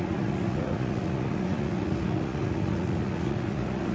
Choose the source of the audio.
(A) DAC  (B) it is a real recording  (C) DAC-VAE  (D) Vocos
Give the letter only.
D